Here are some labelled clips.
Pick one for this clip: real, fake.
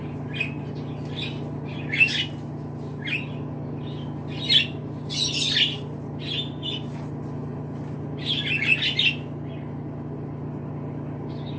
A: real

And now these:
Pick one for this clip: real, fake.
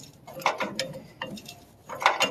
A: real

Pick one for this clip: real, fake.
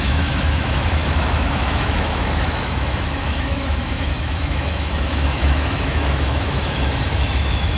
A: fake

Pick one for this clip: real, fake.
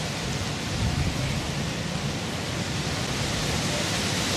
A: fake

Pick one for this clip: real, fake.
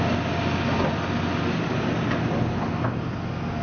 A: real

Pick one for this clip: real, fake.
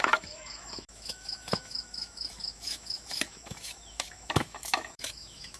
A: fake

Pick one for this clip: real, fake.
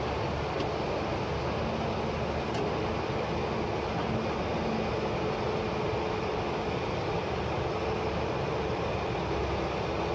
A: real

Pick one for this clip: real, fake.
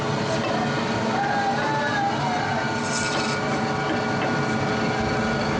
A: real